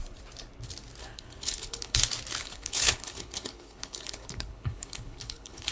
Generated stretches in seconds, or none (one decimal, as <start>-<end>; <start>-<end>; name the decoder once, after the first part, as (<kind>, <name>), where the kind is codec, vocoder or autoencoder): 1.0-2.0 (codec, HILCodec); 2.4-5.7